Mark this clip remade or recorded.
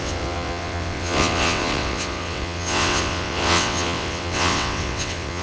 remade